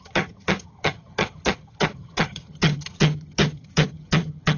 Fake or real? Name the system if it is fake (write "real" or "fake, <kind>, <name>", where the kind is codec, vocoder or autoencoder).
fake, vocoder, HiFi-GAN